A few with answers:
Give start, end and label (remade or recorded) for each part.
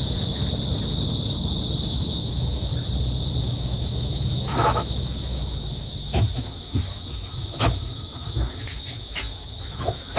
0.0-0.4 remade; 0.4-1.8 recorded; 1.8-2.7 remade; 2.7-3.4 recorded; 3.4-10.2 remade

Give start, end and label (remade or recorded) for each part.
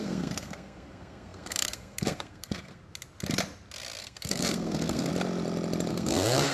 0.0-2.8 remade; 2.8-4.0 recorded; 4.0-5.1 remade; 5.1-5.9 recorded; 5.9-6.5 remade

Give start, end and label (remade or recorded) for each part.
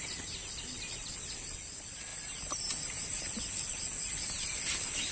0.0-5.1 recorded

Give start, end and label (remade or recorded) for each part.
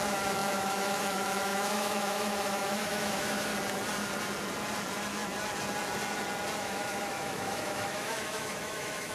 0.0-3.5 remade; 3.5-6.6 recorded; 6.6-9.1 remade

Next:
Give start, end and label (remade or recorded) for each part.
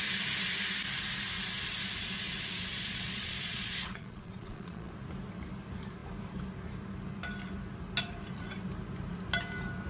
0.0-2.7 recorded; 2.7-4.9 remade; 4.9-9.9 recorded